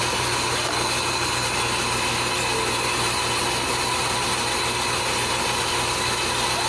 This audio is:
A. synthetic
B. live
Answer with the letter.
B